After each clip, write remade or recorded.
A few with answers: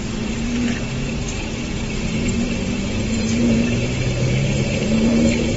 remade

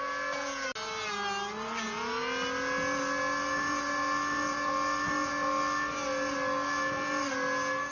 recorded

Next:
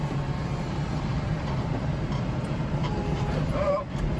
remade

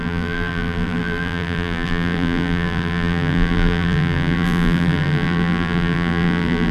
remade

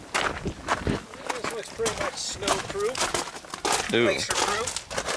recorded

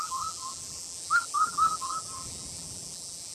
remade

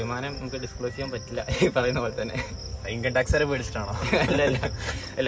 recorded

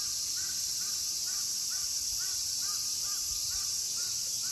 remade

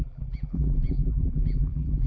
remade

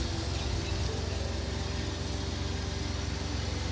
recorded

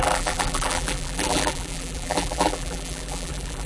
remade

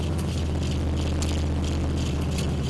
recorded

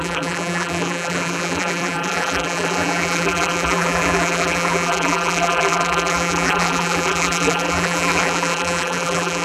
remade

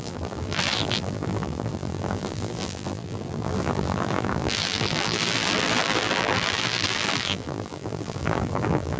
remade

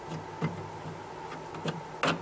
recorded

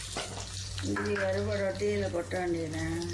recorded